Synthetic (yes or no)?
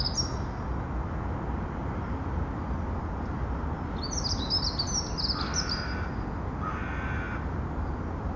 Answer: no